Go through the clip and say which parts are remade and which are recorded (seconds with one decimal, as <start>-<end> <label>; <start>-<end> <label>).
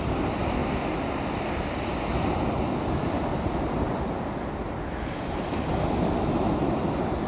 0.0-0.6 remade; 0.6-1.4 recorded; 1.4-3.3 remade; 3.3-7.3 recorded